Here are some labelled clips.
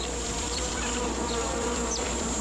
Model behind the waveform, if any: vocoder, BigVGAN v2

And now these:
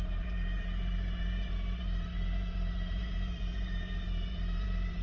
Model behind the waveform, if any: vocoder, BigVGAN v2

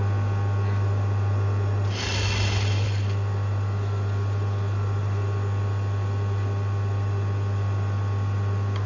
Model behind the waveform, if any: none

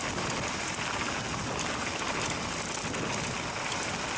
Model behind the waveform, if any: none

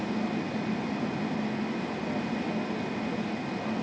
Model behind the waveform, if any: none